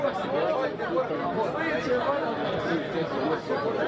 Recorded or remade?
recorded